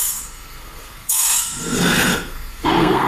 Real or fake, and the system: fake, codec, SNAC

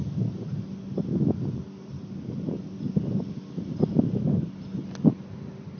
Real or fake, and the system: real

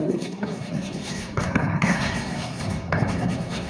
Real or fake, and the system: fake, codec, SNAC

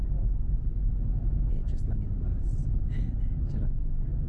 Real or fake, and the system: real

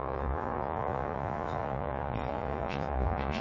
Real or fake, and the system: fake, vocoder, Vocos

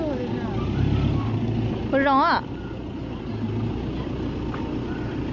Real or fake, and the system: real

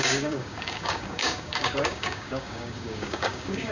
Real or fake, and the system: fake, codec, DAC